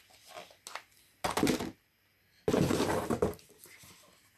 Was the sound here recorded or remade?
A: recorded